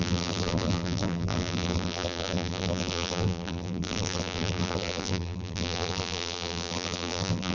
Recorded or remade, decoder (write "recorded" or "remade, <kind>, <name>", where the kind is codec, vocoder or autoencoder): remade, vocoder, BigVGAN v2